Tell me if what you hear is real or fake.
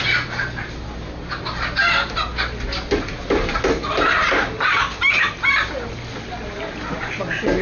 real